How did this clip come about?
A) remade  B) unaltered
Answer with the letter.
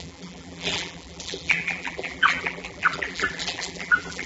A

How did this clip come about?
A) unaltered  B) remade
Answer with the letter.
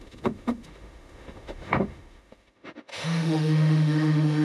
B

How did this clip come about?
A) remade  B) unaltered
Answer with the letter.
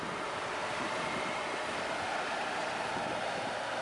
A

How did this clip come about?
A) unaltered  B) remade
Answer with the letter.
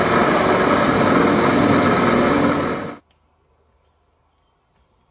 A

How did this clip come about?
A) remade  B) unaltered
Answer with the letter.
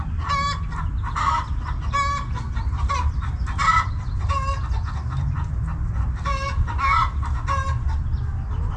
B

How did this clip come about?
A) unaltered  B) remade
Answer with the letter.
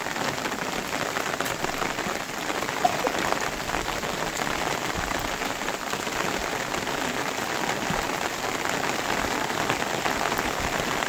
A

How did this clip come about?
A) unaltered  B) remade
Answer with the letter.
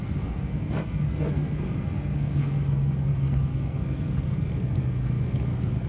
B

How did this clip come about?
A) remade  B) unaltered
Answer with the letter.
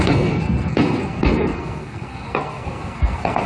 A